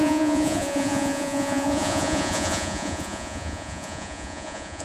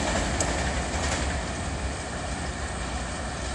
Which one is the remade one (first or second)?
first